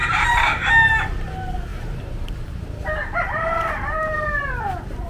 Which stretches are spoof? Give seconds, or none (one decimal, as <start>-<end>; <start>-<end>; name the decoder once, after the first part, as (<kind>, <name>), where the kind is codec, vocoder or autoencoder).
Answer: 0.0-0.6 (vocoder, BigVGAN v2); 1.7-5.1

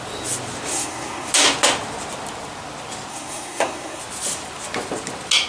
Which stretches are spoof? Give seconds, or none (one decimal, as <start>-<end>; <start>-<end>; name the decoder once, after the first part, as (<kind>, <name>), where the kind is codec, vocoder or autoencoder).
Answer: 0.7-1.3 (codec, SNAC); 3.1-4.0

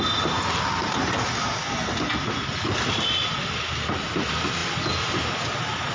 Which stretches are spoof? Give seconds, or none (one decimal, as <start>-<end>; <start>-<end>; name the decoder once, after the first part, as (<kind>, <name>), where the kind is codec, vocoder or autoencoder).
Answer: none